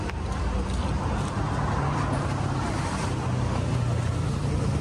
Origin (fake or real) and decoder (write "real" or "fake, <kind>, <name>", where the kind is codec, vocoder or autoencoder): real